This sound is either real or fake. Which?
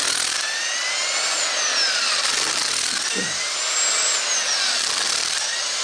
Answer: real